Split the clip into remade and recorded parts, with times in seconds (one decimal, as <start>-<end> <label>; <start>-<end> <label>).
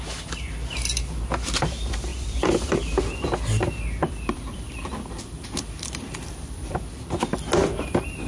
0.0-2.1 recorded; 2.1-2.7 remade; 2.7-4.0 recorded; 4.0-6.7 remade; 6.7-8.3 recorded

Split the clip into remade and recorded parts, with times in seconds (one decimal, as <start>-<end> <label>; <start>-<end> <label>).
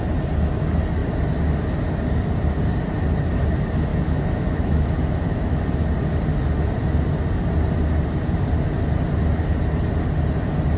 0.0-3.9 recorded; 3.9-5.6 remade; 5.6-10.8 recorded